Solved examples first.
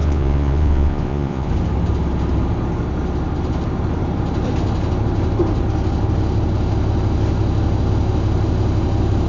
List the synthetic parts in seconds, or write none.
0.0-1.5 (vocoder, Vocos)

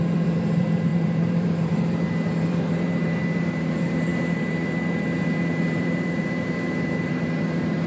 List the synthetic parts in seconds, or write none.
0.0-7.9 (vocoder, BigVGAN v2)

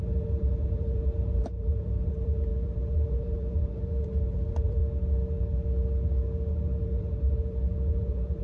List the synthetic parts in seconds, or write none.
0.0-4.8 (vocoder, BigVGAN v2); 6.5-8.4

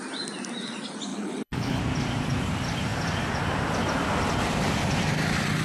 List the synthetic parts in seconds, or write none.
1.1-1.8 (codec, HILCodec)